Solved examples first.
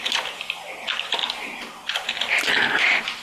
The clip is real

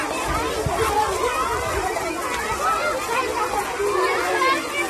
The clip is real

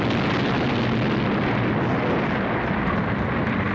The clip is real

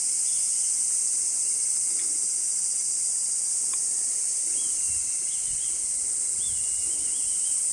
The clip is real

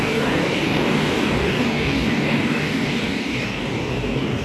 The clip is fake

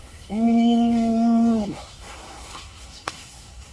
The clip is fake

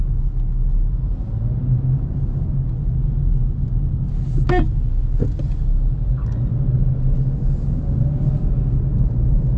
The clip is real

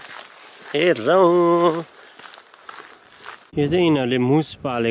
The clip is real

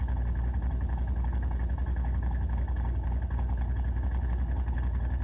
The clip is real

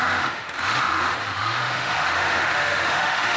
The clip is fake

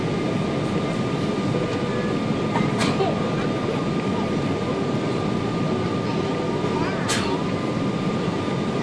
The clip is real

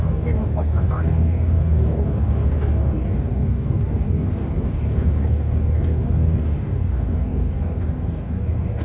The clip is fake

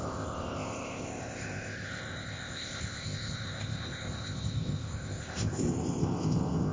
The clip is fake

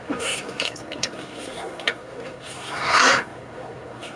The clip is fake